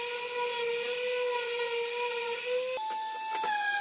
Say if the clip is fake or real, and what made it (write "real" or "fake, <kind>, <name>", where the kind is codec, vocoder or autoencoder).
real